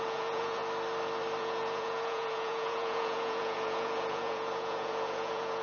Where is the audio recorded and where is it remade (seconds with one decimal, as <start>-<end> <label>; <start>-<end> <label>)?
0.0-0.6 remade; 0.6-1.4 recorded; 1.4-5.6 remade